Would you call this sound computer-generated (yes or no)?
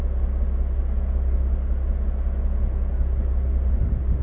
no